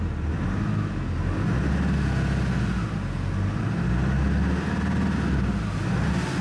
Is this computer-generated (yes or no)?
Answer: no